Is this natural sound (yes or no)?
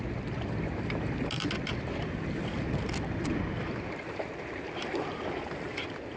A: yes